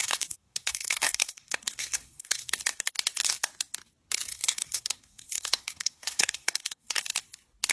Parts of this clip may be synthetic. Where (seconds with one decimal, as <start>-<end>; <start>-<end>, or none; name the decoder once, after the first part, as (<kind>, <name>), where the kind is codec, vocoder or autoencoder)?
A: 0.0-2.5 (codec, SNAC); 4.3-7.0

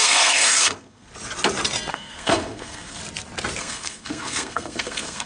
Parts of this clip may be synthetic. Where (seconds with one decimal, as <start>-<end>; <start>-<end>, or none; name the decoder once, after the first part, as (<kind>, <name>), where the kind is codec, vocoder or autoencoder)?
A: 0.0-1.1 (codec, SNAC); 1.9-3.0; 3.6-5.3